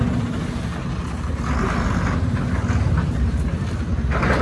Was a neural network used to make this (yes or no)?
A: no